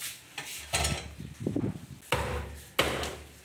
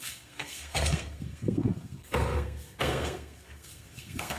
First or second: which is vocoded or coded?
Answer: second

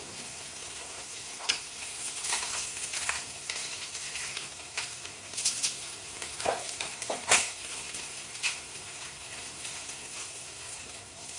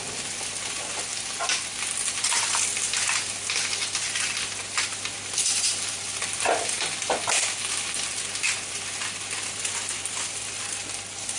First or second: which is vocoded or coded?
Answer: first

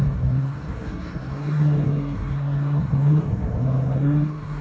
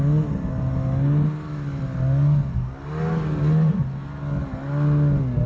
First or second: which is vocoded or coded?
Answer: first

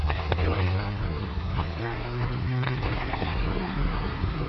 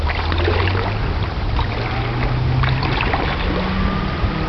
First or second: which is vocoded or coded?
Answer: first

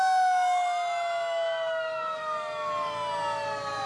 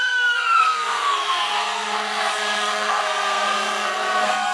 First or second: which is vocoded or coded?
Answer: second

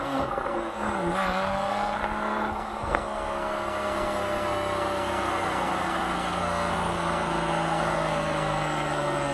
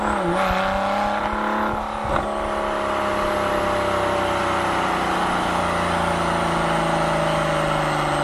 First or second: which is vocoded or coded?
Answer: first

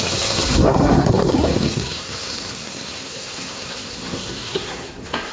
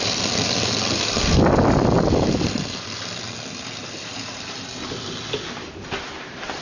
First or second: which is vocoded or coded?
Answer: first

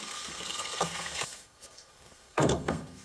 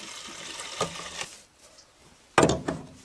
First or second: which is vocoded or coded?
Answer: first